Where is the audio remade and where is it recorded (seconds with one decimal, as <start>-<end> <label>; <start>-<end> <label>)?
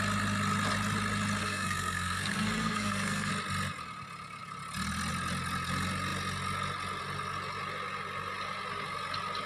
0.0-1.4 recorded; 1.4-3.3 remade; 3.3-9.5 recorded